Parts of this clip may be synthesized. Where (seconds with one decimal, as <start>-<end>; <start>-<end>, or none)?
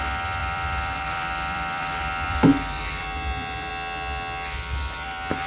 0.4-3.7